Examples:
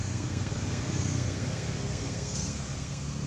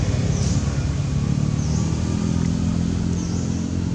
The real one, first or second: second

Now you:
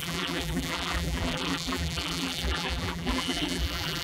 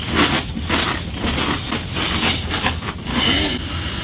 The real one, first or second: second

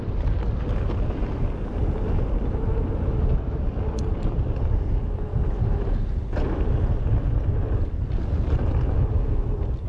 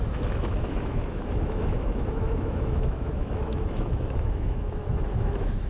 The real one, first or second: first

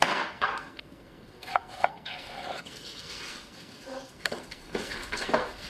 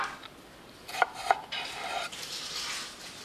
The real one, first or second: second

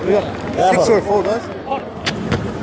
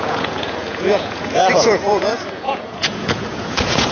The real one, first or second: first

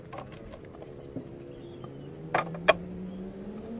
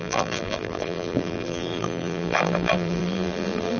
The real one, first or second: first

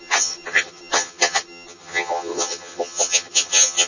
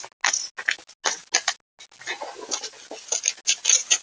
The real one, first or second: second